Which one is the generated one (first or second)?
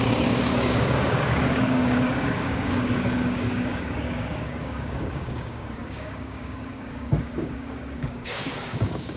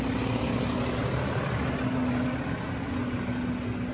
first